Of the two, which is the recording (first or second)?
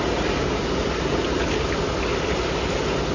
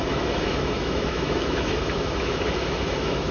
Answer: first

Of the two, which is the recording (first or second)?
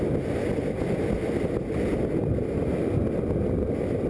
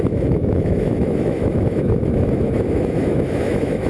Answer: first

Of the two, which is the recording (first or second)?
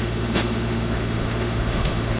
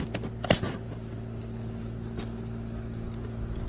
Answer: second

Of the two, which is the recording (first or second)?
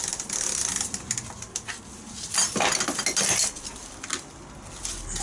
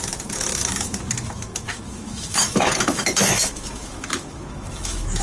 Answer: first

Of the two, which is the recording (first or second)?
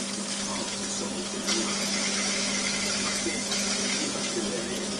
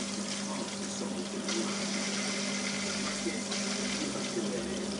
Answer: second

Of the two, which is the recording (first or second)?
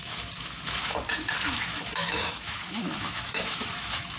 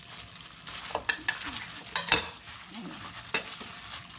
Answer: second